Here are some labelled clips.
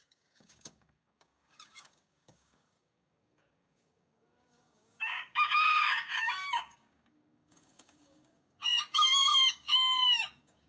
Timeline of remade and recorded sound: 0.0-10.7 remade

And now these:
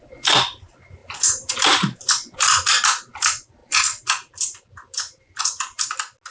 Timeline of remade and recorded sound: 0.0-6.3 recorded

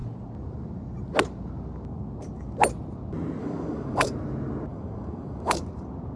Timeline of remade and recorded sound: 0.0-3.4 recorded; 3.4-4.1 remade; 4.1-4.7 recorded; 4.7-5.6 remade; 5.6-6.2 recorded

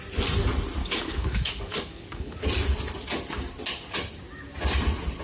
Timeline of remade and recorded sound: 0.0-0.8 recorded; 0.8-2.4 remade; 2.4-5.2 recorded

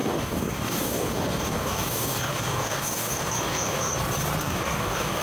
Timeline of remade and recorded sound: 0.0-3.9 remade; 3.9-4.4 recorded; 4.4-5.2 remade

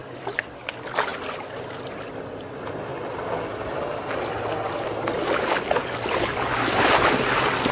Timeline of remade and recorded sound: 0.0-7.7 recorded